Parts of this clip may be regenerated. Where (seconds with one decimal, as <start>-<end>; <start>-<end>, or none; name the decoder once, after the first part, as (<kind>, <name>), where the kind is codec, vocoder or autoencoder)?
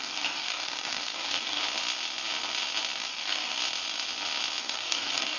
0.0-1.6 (codec, DAC); 3.0-3.6; 4.6-5.4